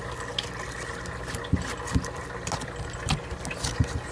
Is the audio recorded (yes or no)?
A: yes